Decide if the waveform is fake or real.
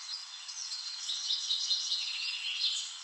fake